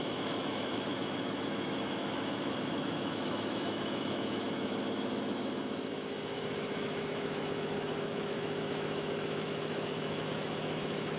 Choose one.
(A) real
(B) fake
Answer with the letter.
B